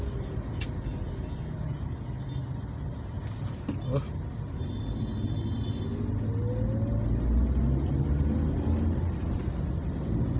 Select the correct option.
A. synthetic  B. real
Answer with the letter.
B